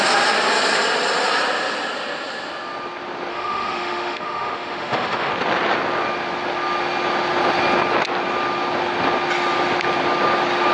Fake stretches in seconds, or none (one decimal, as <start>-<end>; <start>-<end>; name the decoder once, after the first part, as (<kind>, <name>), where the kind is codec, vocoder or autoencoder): 3.3-5.3 (autoencoder, DAC-VAE)